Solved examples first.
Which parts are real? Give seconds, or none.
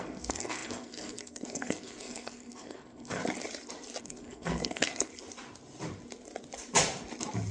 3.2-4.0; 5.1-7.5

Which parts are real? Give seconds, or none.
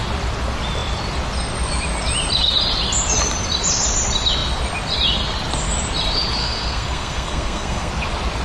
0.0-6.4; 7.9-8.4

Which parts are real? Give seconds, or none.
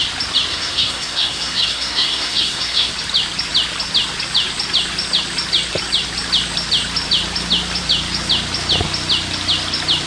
0.0-0.5; 2.9-10.1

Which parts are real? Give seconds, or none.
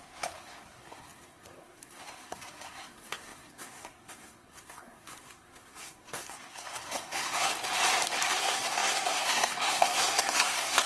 7.5-8.4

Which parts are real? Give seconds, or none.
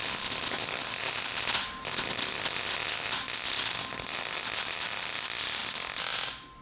0.0-6.6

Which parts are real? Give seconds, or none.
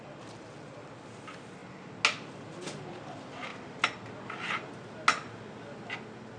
0.0-6.4